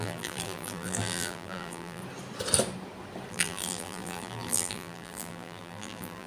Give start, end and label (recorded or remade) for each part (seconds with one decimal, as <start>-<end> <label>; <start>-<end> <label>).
0.0-2.0 remade; 2.0-3.3 recorded; 3.3-6.3 remade